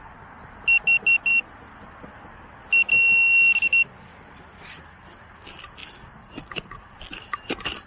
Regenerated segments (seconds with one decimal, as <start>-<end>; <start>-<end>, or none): none